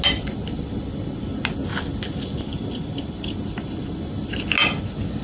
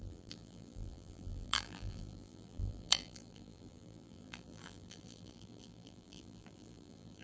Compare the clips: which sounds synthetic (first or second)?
second